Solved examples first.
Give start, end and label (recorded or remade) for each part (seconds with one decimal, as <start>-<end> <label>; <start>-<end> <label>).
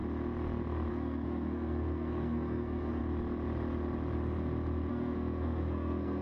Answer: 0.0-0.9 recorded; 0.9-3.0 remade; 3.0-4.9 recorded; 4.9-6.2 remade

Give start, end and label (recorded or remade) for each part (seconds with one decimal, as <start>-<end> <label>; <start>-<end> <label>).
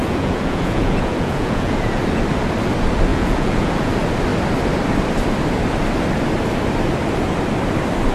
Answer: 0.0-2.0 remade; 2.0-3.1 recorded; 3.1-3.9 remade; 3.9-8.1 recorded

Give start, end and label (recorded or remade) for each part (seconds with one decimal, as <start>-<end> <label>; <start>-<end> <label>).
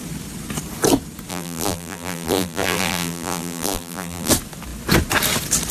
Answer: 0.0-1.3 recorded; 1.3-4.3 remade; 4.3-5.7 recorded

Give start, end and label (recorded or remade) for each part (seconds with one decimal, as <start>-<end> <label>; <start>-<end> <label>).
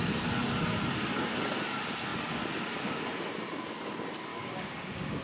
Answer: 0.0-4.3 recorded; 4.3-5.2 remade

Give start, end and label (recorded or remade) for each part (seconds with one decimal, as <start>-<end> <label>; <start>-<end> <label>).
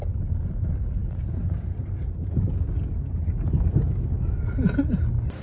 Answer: 0.0-5.4 recorded